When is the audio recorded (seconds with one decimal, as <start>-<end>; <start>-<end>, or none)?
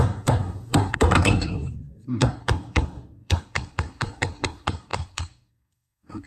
none